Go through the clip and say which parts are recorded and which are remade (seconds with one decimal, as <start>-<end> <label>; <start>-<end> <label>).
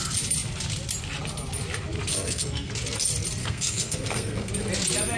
0.0-2.1 recorded; 2.1-2.7 remade; 2.7-3.4 recorded; 3.4-4.5 remade; 4.5-5.2 recorded